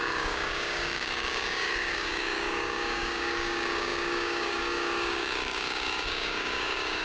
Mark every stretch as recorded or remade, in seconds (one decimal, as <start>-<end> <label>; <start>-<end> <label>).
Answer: 0.0-7.0 remade